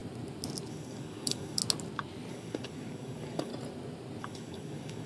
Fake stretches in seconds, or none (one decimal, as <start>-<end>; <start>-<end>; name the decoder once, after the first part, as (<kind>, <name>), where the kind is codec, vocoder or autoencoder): 0.7-1.6 (codec, DAC); 2.3-3.5; 4.2-5.1